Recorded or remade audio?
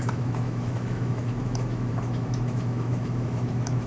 remade